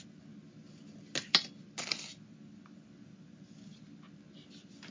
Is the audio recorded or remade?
recorded